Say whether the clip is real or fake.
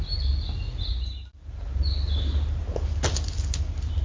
real